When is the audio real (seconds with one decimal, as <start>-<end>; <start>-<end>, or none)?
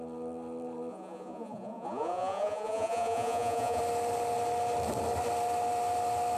0.0-0.9; 3.8-6.4